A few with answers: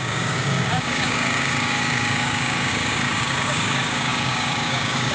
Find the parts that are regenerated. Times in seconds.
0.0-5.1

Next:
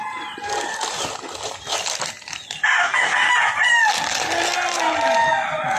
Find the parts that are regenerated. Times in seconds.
2.8-3.3

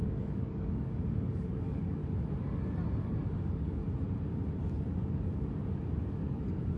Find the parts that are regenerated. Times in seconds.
0.0-2.0; 3.0-3.8; 4.6-5.6; 6.1-6.8

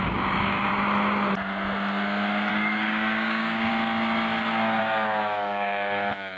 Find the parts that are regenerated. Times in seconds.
0.0-0.7; 2.5-3.7; 4.8-6.4

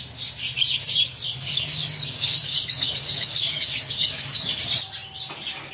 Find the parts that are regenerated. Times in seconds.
1.1-4.5

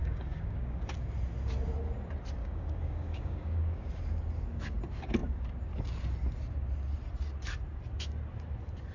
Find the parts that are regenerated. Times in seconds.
0.0-0.8; 2.4-3.9

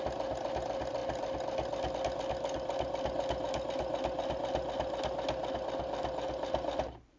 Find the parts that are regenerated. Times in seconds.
none

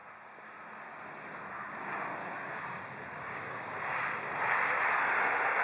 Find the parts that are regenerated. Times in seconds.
2.2-2.8; 3.2-3.8